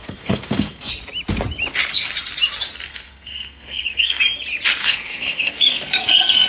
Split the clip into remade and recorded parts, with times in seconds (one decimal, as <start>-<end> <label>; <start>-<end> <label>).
0.0-0.9 remade; 0.9-2.9 recorded; 2.9-4.2 remade; 4.2-4.8 recorded; 4.8-6.5 remade

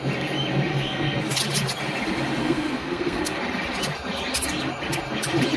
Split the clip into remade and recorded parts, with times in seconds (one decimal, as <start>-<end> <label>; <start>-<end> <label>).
0.0-0.7 recorded; 0.7-1.2 remade; 1.2-2.4 recorded; 2.4-3.4 remade; 3.4-5.6 recorded

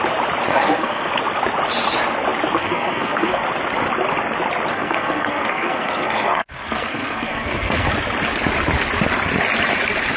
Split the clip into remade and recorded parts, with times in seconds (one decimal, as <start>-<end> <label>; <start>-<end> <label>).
0.0-0.5 recorded; 0.5-1.1 remade; 1.1-2.6 recorded; 2.6-3.4 remade; 3.4-4.7 recorded; 4.7-7.9 remade; 7.9-10.2 recorded

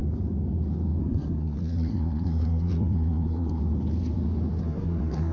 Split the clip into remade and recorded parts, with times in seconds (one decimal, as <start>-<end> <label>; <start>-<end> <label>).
0.0-1.0 recorded; 1.0-3.6 remade; 3.6-4.6 recorded; 4.6-5.3 remade

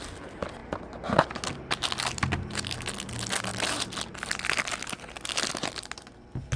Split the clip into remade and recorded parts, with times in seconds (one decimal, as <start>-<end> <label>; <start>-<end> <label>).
0.0-6.6 recorded